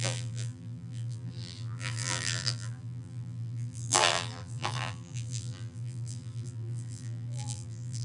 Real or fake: fake